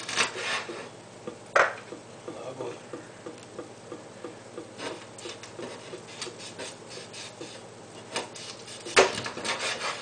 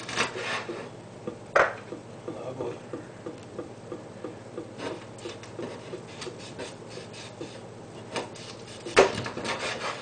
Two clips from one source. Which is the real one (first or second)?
first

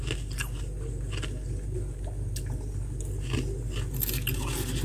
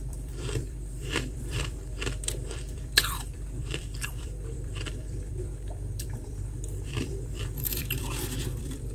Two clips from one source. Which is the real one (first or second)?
first